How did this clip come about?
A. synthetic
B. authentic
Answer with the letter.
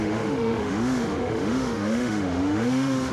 A